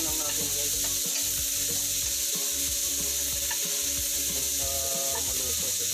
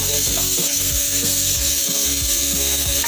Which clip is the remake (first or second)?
second